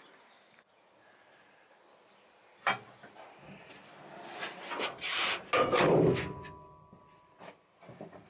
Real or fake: real